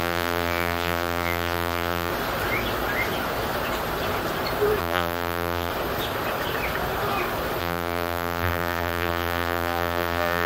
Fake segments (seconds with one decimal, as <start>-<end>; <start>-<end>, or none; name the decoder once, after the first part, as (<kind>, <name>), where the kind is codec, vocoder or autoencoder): 0.0-2.1 (vocoder, BigVGAN v2); 4.8-5.7; 7.6-10.5